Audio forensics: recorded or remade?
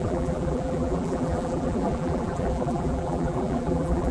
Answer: remade